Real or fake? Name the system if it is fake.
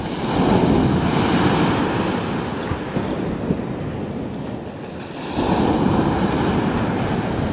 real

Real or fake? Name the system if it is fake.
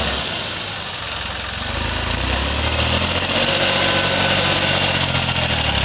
real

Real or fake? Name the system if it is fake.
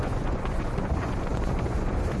fake, vocoder, Vocos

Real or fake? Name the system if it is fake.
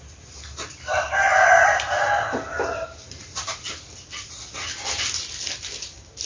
real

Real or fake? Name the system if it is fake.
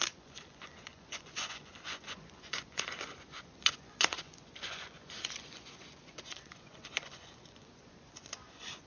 fake, vocoder, Vocos